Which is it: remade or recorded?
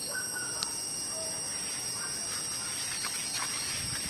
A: recorded